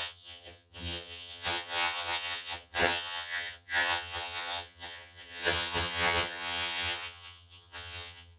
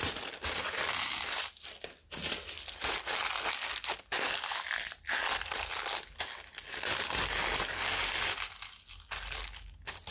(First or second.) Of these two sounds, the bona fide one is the second